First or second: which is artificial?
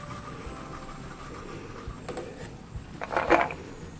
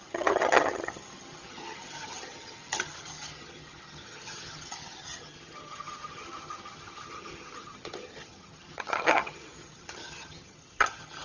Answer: second